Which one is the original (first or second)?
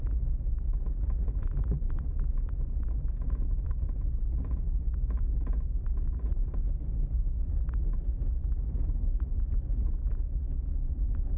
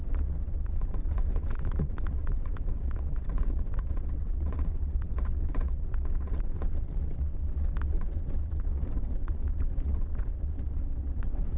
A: first